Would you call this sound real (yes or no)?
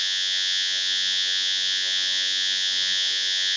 no